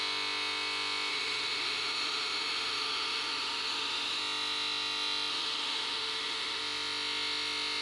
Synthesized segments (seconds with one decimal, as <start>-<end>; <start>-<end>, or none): 1.1-4.2; 5.3-6.6